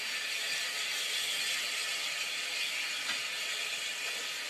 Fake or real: real